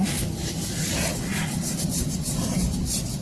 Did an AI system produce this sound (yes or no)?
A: no